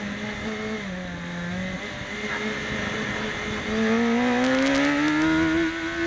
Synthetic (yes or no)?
no